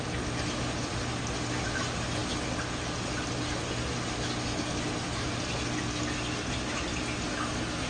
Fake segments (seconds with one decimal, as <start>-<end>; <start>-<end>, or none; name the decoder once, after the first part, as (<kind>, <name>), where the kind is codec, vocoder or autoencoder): none